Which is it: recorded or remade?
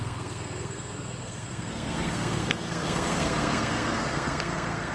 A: remade